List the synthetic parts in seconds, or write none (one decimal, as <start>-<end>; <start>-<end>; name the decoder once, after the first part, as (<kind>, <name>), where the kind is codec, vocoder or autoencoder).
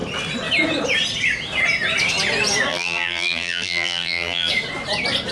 2.7-4.5 (vocoder, BigVGAN v2)